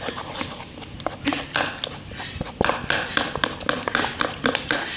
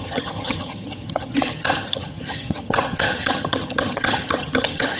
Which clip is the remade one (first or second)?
second